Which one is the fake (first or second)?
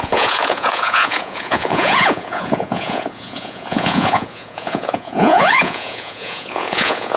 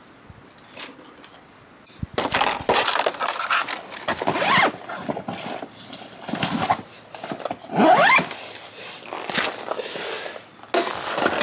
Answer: first